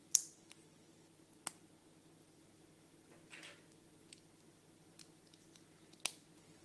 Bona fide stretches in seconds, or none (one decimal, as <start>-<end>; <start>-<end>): 0.0-6.6